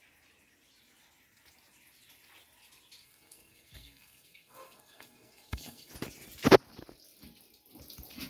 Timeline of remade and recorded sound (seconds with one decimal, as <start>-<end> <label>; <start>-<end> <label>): 0.0-3.0 recorded; 3.0-5.9 remade; 5.9-8.3 recorded